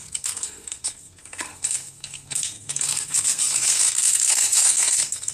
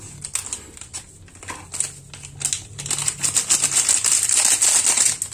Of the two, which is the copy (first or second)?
first